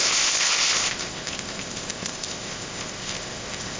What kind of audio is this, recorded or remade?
remade